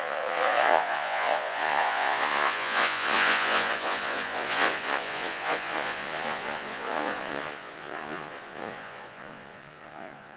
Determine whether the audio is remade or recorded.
remade